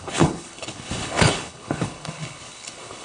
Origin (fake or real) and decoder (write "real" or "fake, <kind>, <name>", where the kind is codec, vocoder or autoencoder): fake, codec, HILCodec